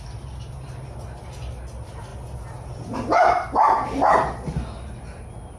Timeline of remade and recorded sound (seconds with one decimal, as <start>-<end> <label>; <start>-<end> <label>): 0.0-5.6 recorded